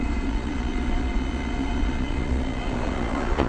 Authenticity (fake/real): fake